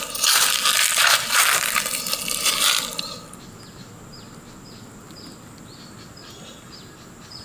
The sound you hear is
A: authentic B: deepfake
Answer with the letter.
A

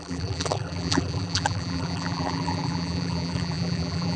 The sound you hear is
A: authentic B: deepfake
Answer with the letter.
B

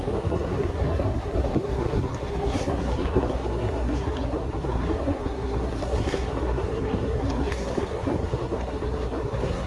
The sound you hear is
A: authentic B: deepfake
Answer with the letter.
B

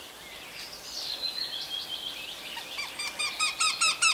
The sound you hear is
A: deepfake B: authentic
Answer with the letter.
B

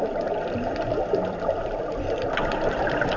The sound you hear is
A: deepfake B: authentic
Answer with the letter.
B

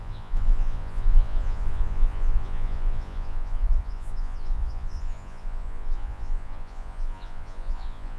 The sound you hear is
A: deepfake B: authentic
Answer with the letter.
A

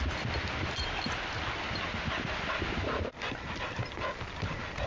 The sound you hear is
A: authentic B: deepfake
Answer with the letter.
A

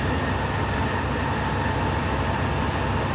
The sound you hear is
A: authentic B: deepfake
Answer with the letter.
A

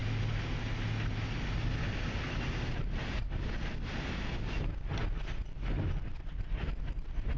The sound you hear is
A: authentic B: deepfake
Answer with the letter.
A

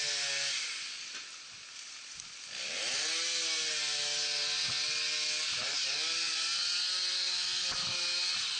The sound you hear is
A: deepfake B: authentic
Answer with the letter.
B